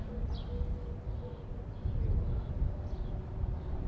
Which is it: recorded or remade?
recorded